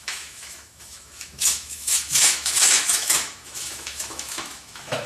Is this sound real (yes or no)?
no